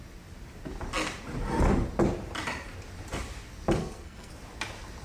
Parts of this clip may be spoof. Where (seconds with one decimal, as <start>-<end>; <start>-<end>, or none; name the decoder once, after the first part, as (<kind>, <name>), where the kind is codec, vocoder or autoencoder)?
3.8-4.3 (codec, SNAC)